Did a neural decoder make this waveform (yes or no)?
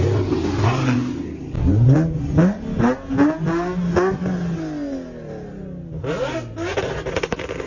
no